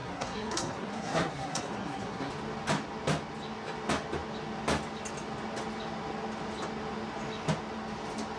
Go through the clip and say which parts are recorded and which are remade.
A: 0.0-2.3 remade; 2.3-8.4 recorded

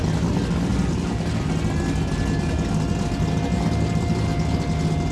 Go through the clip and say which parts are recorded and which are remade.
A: 0.0-5.1 recorded

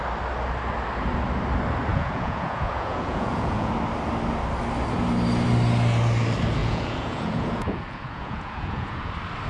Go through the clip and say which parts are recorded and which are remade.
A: 0.0-1.9 recorded; 1.9-3.7 remade; 3.7-6.6 recorded; 6.6-9.1 remade; 9.1-9.5 recorded

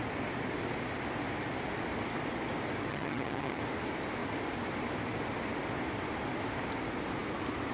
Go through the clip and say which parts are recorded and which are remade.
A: 0.0-2.9 recorded; 2.9-3.6 remade; 3.6-7.7 recorded